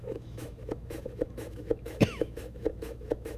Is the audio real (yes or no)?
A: no